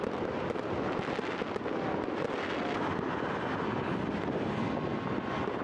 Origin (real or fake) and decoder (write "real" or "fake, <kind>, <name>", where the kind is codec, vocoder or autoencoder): real